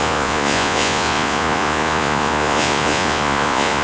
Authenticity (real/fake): fake